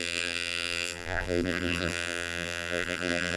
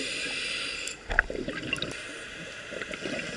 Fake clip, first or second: first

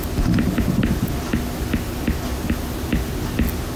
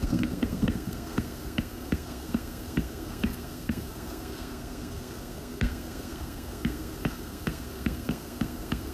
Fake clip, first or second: second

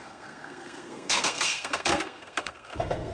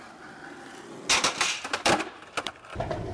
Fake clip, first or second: first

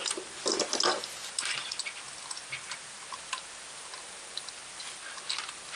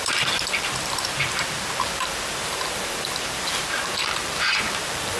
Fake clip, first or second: second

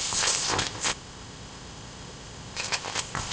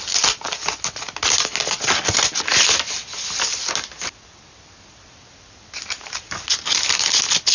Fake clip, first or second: first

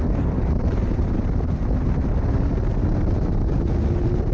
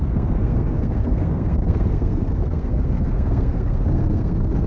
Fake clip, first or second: second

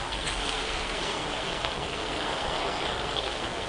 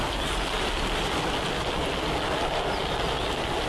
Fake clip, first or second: first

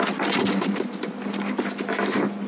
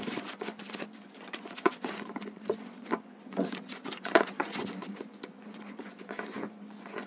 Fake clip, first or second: second